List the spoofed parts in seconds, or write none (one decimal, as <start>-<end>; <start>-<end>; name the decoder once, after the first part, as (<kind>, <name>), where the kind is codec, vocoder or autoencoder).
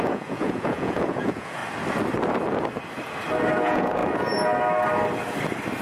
0.0-1.6 (vocoder, Vocos); 3.5-4.0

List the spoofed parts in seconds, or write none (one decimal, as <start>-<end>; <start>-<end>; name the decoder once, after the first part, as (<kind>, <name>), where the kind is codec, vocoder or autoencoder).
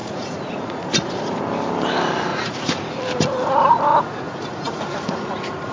0.0-1.4 (vocoder, Vocos); 2.3-2.9; 3.9-5.7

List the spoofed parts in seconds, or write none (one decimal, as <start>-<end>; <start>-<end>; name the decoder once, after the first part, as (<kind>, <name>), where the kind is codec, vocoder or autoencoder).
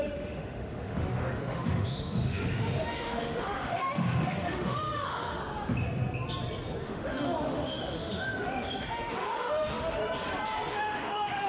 0.0-5.4 (autoencoder, DAC-VAE); 6.8-10.0; 10.7-11.5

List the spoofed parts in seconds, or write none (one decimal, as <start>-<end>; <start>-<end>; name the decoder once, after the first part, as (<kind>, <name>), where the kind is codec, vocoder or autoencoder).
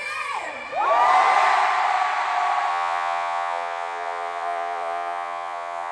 2.7-5.9 (vocoder, Vocos)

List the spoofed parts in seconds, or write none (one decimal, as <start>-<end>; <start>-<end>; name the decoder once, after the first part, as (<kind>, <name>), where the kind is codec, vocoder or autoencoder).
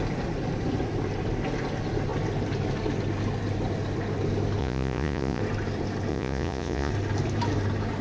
4.6-5.4 (vocoder, Vocos); 6.1-6.9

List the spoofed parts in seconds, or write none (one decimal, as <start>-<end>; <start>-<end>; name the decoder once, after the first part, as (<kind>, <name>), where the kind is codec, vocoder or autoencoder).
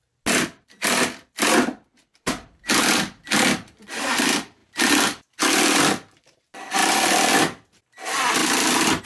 2.0-3.9 (vocoder, BigVGAN v2); 4.6-5.8; 6.8-7.4; 8.4-9.0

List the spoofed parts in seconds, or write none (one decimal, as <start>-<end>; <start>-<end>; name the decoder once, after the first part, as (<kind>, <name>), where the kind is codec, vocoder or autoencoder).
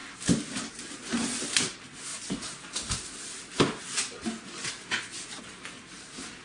none